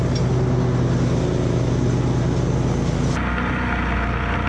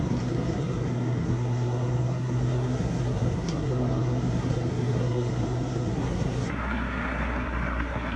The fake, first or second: second